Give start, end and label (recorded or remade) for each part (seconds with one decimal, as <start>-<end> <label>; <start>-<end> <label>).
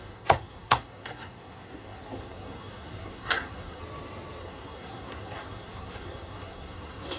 0.0-3.8 remade; 3.8-4.4 recorded; 4.4-7.2 remade